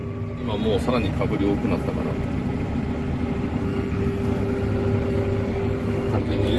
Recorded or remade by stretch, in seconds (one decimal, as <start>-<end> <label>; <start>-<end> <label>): 0.0-3.5 recorded; 3.5-4.4 remade; 4.4-5.5 recorded; 5.5-6.6 remade

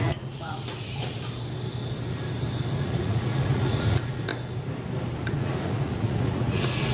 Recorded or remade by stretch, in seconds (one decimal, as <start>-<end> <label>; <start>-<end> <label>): 0.0-1.0 remade; 1.0-2.7 recorded; 2.7-4.3 remade; 4.3-5.2 recorded; 5.2-6.9 remade

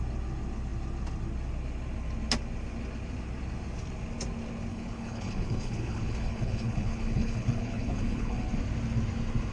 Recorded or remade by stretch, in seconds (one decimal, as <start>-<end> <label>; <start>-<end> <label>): 0.0-4.7 recorded; 4.7-8.5 remade; 8.5-9.5 recorded